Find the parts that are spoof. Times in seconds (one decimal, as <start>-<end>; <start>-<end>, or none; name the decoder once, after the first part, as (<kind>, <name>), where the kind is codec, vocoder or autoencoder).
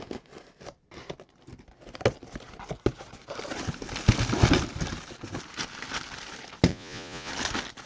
6.7-7.3 (vocoder, Vocos)